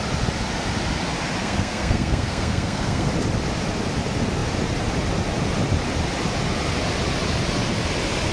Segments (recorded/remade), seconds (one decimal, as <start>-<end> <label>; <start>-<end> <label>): 0.0-1.4 recorded; 1.4-3.1 remade; 3.1-8.3 recorded